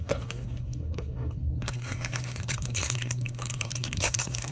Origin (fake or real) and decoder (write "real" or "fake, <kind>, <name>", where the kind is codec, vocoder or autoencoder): fake, codec, SNAC